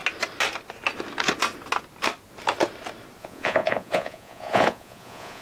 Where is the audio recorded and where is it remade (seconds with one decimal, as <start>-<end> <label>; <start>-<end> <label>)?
0.0-3.2 recorded; 3.2-5.4 remade